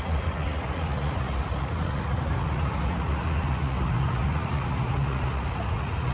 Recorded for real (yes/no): no